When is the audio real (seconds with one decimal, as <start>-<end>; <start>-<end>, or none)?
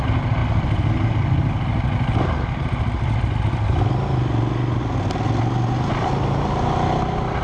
0.0-7.4